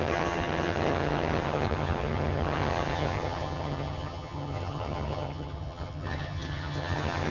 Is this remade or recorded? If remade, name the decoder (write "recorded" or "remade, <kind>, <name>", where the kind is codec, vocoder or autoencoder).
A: remade, vocoder, HiFi-GAN